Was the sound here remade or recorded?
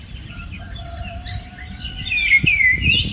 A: remade